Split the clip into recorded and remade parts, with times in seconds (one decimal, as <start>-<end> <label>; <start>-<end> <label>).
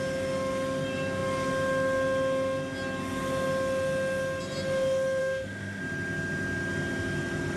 0.0-5.2 recorded; 5.2-5.8 remade; 5.8-7.6 recorded